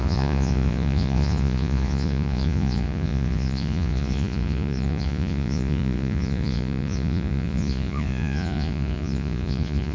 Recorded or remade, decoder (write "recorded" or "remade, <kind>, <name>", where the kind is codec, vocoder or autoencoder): remade, vocoder, Vocos